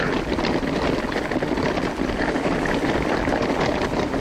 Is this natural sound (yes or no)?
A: yes